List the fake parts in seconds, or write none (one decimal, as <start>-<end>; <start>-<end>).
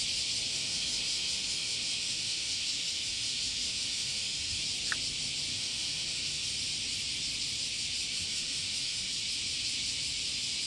0.5-4.6; 5.5-6.5; 8.1-9.1